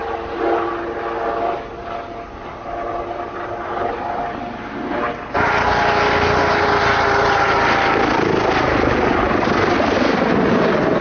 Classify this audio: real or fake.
real